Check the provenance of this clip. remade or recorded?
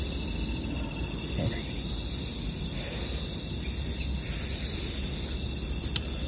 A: recorded